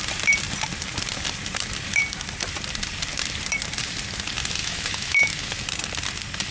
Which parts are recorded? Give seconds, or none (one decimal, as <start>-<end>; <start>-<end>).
0.0-4.6; 5.5-6.5